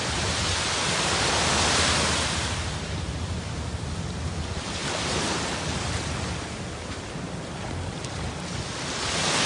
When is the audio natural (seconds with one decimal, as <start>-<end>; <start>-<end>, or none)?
1.2-9.5